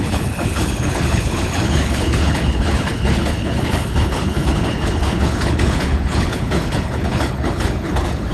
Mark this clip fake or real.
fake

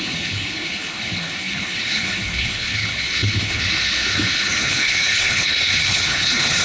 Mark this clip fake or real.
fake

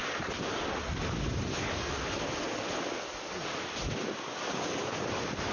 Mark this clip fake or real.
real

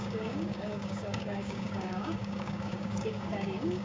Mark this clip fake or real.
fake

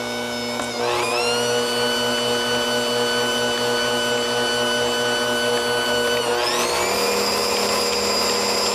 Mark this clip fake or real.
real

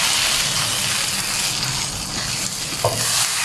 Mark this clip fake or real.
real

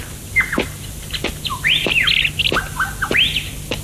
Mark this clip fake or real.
real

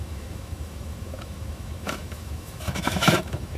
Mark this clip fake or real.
fake